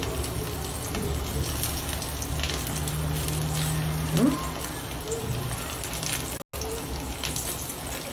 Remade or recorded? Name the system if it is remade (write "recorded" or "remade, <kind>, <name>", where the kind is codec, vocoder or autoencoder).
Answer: recorded